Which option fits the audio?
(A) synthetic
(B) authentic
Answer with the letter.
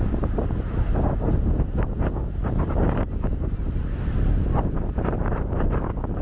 B